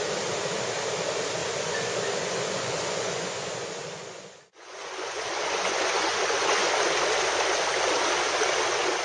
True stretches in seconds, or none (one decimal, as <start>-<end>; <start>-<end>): 0.0-1.4; 6.7-9.0